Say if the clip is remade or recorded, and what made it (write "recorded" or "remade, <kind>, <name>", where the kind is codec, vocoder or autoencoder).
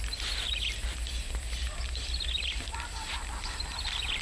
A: recorded